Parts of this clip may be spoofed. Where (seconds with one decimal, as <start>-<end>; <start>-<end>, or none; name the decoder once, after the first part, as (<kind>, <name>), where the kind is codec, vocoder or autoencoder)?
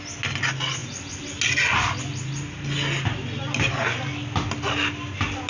none